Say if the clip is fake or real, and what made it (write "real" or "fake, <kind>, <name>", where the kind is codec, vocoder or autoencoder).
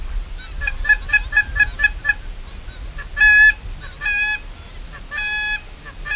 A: real